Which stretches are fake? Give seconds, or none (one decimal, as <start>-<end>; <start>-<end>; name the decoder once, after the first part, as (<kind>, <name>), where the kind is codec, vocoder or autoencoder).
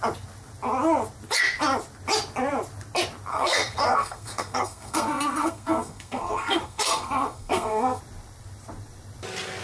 3.3-8.0 (codec, SNAC)